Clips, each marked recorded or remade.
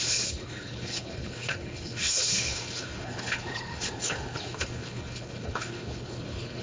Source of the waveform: remade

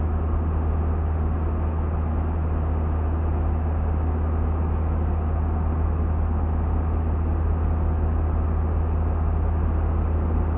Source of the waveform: recorded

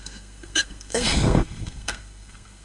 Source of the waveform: remade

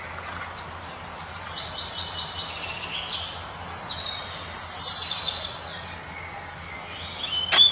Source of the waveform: recorded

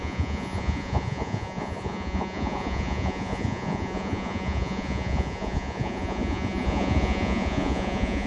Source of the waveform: remade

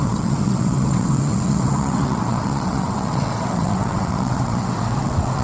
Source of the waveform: remade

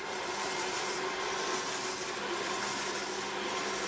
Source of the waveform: remade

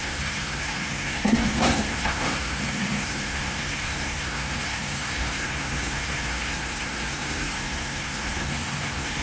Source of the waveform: remade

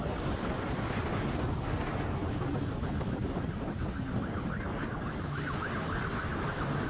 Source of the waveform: recorded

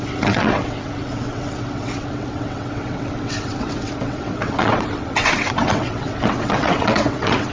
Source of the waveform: remade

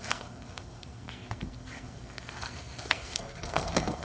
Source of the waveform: remade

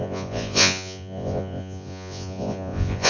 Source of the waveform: remade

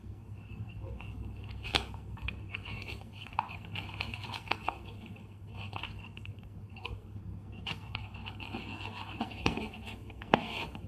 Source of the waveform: remade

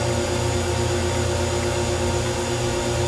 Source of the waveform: recorded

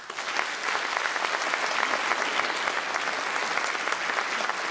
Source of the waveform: recorded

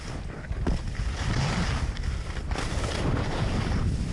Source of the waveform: recorded